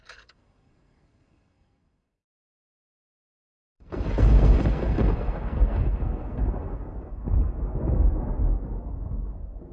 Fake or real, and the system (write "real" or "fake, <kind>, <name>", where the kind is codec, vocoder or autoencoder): fake, codec, SNAC